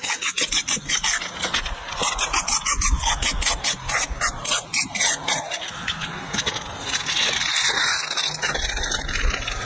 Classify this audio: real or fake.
real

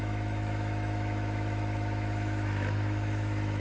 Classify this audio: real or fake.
fake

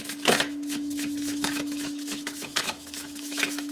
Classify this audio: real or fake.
fake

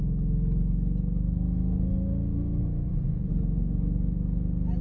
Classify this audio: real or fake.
real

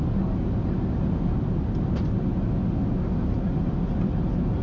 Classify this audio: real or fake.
real